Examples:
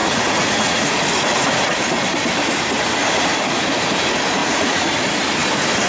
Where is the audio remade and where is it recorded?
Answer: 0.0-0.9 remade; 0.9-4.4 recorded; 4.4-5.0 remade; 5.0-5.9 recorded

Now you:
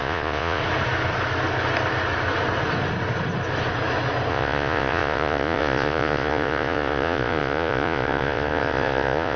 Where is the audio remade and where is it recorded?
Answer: 0.0-0.6 remade; 0.6-4.3 recorded; 4.3-9.4 remade

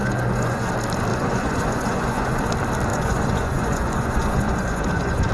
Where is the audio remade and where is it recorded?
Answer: 0.0-0.7 remade; 0.7-1.1 recorded; 1.1-2.4 remade; 2.4-2.9 recorded; 2.9-5.3 remade

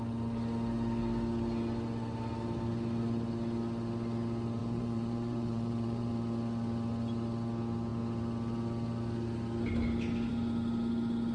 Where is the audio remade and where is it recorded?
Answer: 0.0-4.6 recorded; 4.6-6.1 remade; 6.1-11.3 recorded

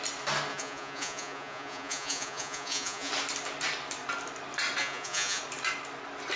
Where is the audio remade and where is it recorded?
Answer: 0.0-0.5 recorded; 0.5-3.1 remade; 3.1-4.8 recorded; 4.8-5.4 remade; 5.4-6.4 recorded

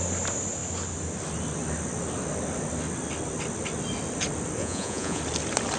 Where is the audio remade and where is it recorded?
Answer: 0.0-4.6 recorded; 4.6-5.2 remade; 5.2-5.8 recorded

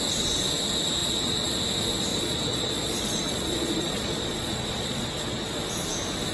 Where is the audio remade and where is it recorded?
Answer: 0.0-1.0 recorded; 1.0-1.6 remade; 1.6-2.1 recorded; 2.1-5.7 remade; 5.7-6.3 recorded